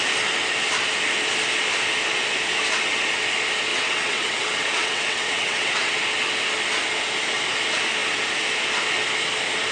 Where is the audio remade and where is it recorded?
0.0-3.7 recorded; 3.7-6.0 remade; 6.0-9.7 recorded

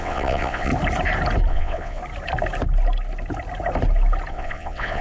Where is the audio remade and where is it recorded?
0.0-0.7 remade; 0.7-1.5 recorded; 1.5-2.0 remade; 2.0-4.3 recorded; 4.3-5.0 remade

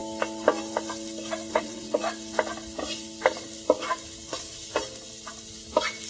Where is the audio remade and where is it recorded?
0.0-1.5 recorded; 1.5-2.0 remade; 2.0-6.1 recorded

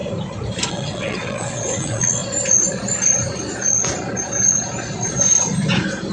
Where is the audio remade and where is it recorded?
0.0-0.7 recorded; 0.7-2.2 remade; 2.2-6.1 recorded

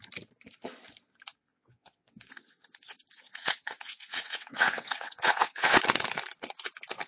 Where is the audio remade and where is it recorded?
0.0-1.5 recorded; 1.5-5.8 remade; 5.8-7.1 recorded

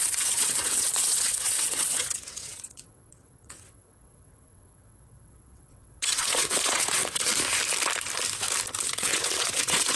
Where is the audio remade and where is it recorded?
0.0-7.3 remade; 7.3-9.0 recorded; 9.0-10.0 remade

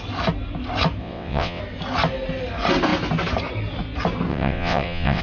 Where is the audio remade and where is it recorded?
0.0-1.0 recorded; 1.0-1.6 remade; 1.6-4.3 recorded; 4.3-5.2 remade